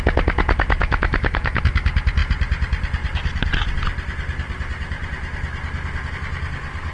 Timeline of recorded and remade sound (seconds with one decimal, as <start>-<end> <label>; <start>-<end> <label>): 0.0-0.8 recorded; 0.8-1.6 remade; 1.6-6.9 recorded